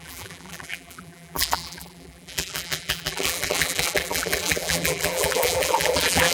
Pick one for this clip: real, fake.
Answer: fake